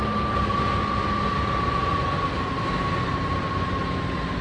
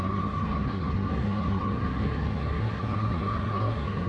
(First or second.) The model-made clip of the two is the second